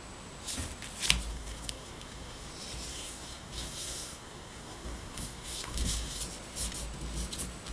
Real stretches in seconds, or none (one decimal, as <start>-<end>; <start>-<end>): 0.0-1.3; 2.5-2.9; 6.2-7.7